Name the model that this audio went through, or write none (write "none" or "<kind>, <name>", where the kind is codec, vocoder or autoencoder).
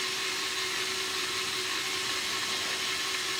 none